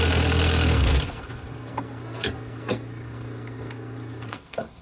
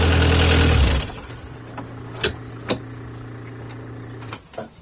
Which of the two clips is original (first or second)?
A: second